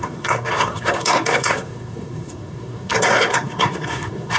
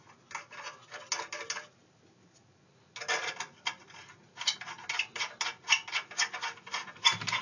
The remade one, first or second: first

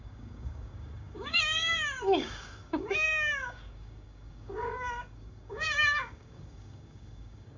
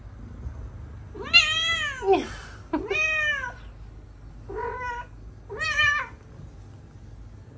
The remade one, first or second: first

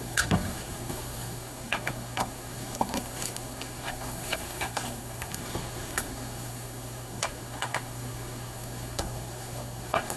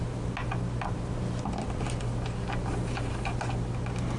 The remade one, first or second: first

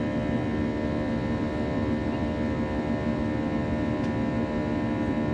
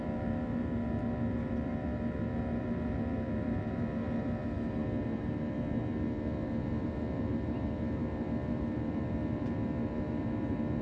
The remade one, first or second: second